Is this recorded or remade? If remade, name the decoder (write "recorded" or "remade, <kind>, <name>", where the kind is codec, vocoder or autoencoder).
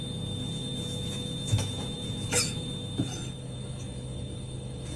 remade, autoencoder, DAC-VAE